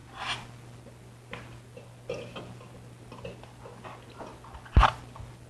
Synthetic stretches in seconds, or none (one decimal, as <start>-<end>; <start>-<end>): none